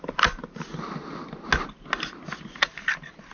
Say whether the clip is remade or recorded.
recorded